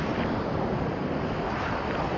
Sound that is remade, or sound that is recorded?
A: recorded